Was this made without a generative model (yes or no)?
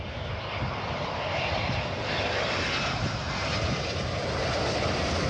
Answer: yes